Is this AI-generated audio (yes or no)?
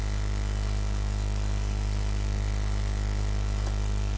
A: no